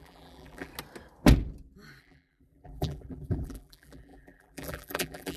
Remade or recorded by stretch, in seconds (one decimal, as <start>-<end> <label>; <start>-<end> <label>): 0.0-0.7 remade; 0.7-2.0 recorded; 2.0-5.4 remade